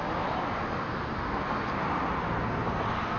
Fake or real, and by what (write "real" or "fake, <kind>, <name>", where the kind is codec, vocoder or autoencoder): real